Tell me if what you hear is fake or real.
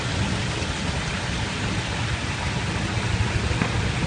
real